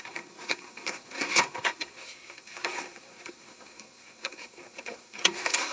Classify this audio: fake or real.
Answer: fake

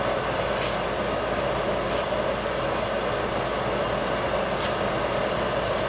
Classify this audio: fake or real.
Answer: real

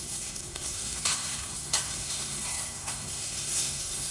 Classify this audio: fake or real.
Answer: fake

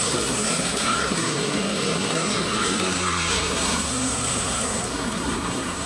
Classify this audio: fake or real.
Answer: fake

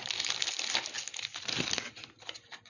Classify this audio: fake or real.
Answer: real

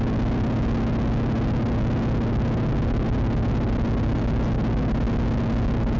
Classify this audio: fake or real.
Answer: real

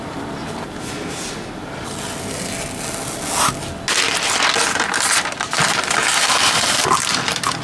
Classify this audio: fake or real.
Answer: real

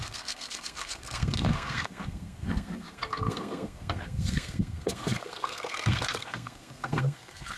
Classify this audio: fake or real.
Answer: fake